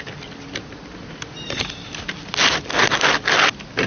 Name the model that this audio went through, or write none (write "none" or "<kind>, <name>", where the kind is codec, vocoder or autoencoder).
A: none